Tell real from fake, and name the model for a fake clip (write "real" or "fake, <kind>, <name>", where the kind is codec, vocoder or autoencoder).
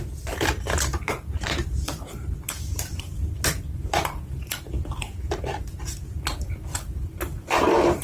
fake, vocoder, BigVGAN v2